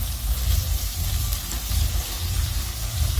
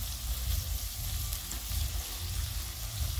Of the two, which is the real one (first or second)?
first